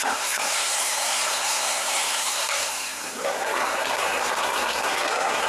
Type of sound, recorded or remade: remade